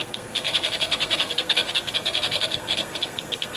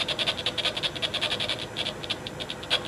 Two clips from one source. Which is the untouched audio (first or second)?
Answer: second